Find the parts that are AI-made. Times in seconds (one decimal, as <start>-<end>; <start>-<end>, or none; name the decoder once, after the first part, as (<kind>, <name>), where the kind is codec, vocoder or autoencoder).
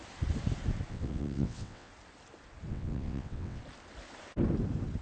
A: 0.9-1.9 (vocoder, WaveNeXt); 2.7-3.6